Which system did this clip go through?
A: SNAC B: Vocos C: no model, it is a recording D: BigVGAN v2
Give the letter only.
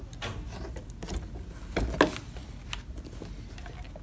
C